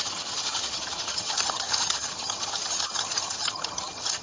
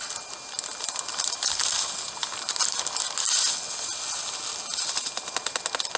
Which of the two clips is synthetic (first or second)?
first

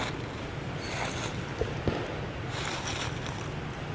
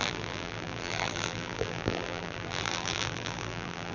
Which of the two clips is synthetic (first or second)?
second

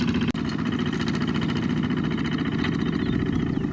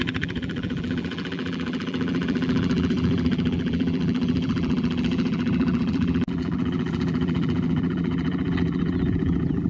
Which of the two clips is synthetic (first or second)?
second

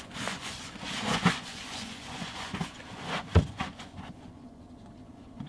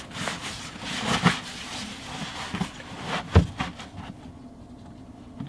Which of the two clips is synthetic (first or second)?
first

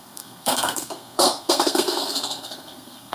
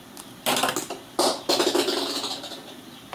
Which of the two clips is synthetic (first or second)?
first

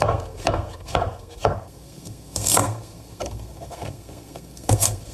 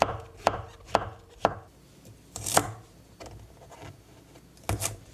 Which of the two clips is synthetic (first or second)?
first